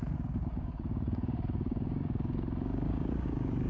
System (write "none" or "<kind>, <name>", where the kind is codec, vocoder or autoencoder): codec, DAC